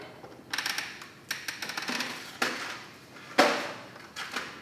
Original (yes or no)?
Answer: yes